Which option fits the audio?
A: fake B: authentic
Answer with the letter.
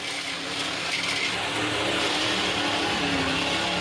B